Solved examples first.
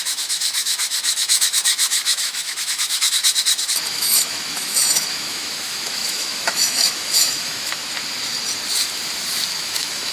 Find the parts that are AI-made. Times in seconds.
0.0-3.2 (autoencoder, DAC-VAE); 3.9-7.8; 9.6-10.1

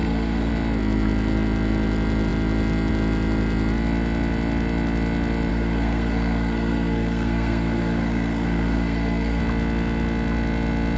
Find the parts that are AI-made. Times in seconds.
0.0-0.5 (codec, SNAC); 5.5-9.4

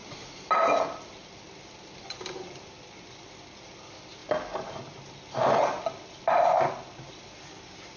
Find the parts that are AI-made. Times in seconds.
none

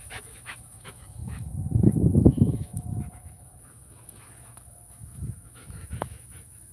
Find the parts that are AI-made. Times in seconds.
0.0-6.7 (autoencoder, DAC-VAE)